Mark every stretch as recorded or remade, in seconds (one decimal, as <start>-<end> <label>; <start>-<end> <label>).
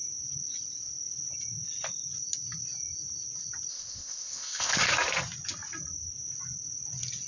0.0-3.7 recorded; 3.7-4.7 remade; 4.7-7.3 recorded